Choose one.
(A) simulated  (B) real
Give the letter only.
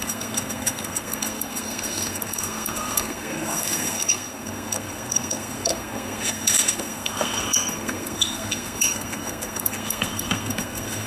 A